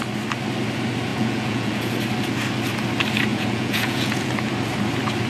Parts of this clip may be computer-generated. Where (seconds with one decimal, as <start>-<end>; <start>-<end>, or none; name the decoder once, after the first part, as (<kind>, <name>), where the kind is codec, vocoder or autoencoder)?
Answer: 1.1-1.9 (vocoder, Vocos); 3.3-4.3